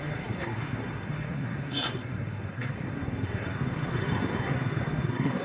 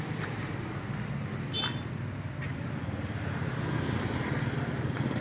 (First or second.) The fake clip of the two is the first